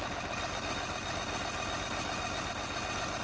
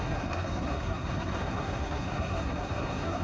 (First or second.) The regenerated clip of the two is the second